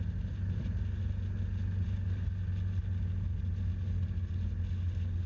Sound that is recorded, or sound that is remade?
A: recorded